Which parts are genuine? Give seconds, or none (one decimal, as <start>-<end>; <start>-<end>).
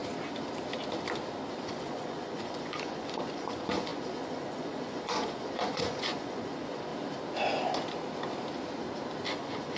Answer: 0.0-1.6; 6.9-9.3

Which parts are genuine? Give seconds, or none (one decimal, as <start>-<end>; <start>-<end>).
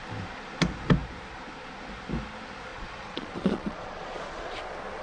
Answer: 0.0-2.7; 4.6-5.0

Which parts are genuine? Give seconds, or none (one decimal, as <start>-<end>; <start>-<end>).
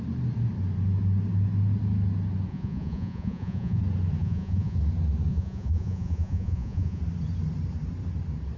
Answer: 0.0-2.5; 3.8-4.2; 4.8-5.3; 7.0-8.6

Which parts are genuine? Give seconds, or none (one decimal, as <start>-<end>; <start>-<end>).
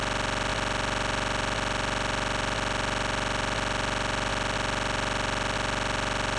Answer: 0.0-6.4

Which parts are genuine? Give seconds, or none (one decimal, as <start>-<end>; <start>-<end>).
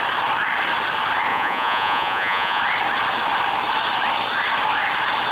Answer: 0.0-1.3; 2.6-5.3